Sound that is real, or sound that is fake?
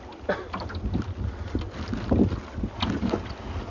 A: real